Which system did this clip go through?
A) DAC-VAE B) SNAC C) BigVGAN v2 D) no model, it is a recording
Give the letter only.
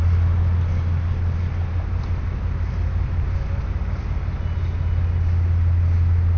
D